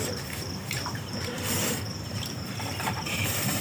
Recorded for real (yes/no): no